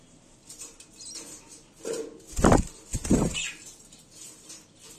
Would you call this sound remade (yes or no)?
no